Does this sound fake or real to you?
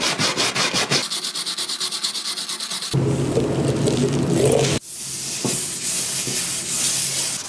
real